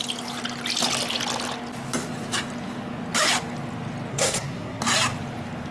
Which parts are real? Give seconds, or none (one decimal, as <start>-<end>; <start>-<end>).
0.0-4.1; 4.8-5.7